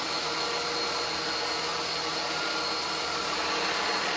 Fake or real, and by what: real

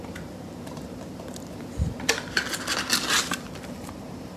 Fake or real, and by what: real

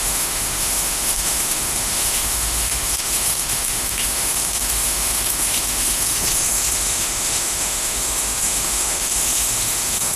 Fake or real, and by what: fake, autoencoder, DAC-VAE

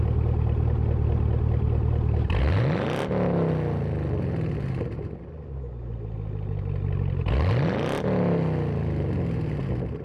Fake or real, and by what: real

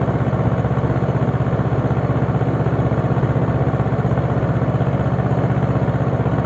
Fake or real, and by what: real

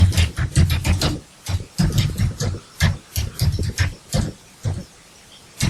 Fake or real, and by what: real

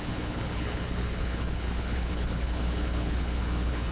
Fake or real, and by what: fake, codec, HILCodec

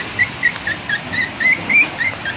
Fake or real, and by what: real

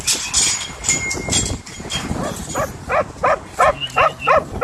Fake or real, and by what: real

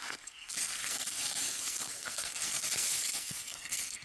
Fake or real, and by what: fake, codec, SNAC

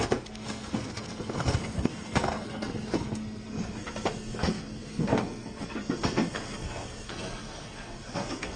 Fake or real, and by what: fake, codec, SNAC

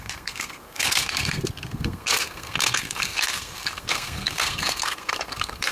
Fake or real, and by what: fake, codec, SNAC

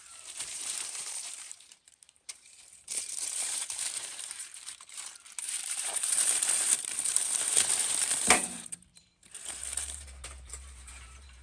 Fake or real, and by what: fake, vocoder, BigVGAN v2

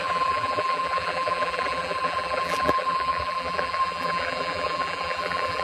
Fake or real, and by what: fake, vocoder, BigVGAN v2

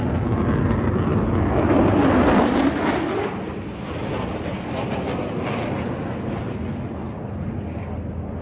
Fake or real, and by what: real